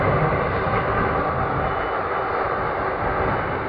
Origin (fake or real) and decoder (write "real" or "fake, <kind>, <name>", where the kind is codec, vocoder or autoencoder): real